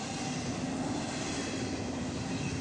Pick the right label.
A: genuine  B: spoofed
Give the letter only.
A